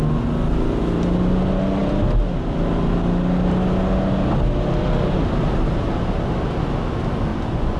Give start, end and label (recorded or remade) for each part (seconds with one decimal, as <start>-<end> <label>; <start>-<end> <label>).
0.0-7.3 recorded; 7.3-7.8 remade